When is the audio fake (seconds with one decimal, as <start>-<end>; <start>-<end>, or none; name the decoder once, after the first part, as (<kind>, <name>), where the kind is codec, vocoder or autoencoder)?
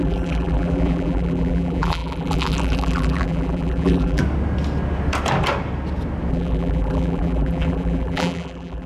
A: 0.0-4.2 (vocoder, BigVGAN v2); 6.3-8.9